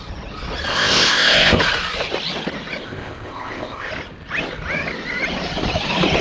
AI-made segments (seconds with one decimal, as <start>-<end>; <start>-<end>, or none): 0.7-1.6; 2.8-3.9